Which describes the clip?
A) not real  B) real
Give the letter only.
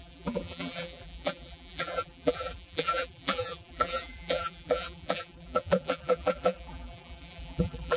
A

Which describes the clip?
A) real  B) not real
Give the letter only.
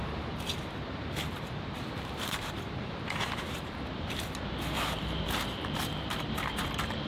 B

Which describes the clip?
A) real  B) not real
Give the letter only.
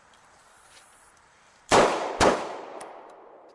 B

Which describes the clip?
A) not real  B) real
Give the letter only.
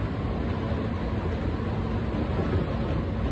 B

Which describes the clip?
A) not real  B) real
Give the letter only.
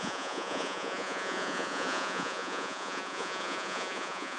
A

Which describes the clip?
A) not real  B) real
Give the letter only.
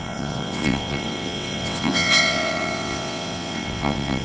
A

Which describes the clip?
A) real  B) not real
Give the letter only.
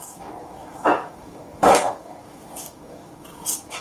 B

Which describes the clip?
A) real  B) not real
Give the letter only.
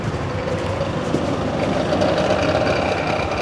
A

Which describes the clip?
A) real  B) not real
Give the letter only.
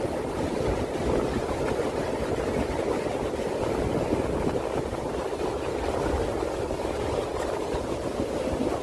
A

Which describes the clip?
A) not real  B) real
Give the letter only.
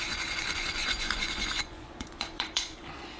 A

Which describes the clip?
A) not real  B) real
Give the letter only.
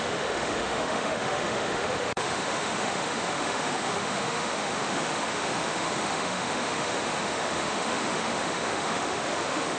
A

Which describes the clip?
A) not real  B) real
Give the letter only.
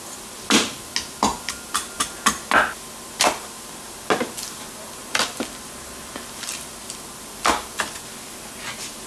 B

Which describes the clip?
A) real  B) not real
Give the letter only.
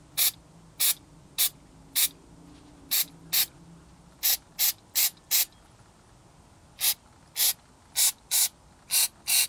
A